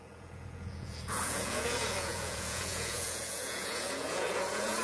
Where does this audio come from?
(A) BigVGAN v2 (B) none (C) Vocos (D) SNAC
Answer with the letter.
C